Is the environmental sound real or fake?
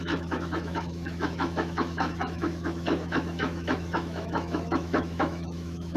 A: fake